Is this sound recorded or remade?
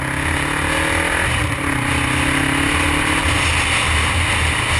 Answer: recorded